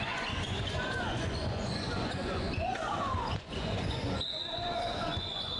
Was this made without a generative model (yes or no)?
no